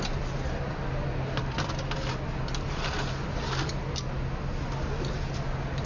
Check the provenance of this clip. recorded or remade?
recorded